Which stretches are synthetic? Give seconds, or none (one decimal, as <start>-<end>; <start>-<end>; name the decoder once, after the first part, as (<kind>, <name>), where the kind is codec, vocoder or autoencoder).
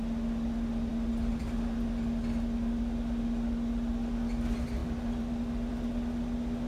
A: none